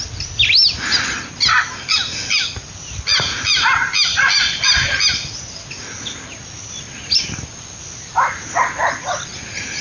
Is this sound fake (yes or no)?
no